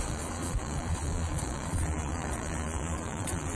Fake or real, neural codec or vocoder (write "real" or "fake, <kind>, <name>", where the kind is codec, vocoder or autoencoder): fake, vocoder, Vocos